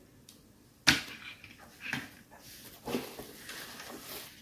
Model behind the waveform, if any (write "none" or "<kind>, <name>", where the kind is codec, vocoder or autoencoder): none